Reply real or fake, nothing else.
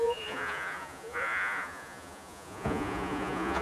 fake